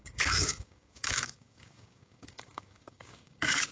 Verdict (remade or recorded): remade